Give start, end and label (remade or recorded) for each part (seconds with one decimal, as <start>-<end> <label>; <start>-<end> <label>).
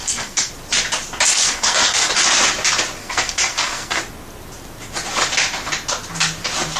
0.0-0.5 remade; 0.5-1.3 recorded; 1.3-2.1 remade; 2.1-3.0 recorded; 3.0-4.0 remade; 4.0-6.8 recorded